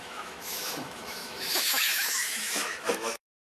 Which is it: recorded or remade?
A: remade